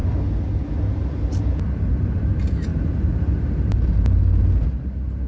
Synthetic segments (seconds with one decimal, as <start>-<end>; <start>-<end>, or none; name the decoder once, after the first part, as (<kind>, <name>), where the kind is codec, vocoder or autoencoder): 2.7-4.1 (vocoder, BigVGAN v2)